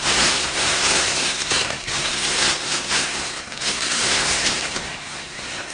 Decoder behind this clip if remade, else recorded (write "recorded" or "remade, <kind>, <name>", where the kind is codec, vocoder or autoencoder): remade, codec, SNAC